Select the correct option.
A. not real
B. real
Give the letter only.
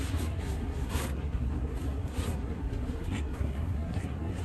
A